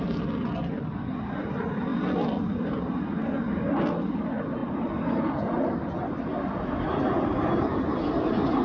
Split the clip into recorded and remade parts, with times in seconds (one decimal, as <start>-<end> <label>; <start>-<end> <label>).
0.0-8.6 recorded